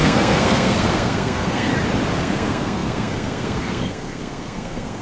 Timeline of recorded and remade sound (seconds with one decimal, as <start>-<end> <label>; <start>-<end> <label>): 0.0-1.7 remade; 1.7-2.2 recorded; 2.2-5.0 remade